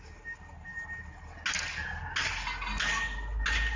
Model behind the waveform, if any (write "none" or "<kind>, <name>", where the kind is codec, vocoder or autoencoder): none